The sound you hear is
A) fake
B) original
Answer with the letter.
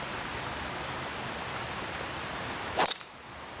B